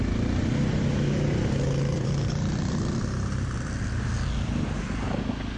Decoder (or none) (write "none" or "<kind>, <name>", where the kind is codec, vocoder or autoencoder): none